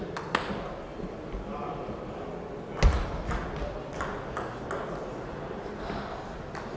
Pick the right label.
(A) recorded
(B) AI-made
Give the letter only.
A